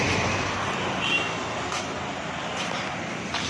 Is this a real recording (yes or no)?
yes